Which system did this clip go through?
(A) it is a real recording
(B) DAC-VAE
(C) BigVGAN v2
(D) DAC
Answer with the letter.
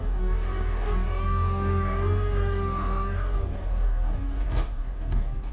D